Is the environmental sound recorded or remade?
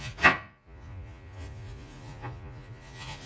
remade